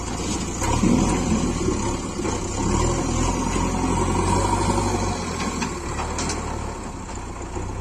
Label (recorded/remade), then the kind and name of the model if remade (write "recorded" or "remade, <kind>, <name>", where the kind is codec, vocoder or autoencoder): recorded